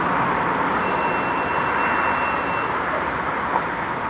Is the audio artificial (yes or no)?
no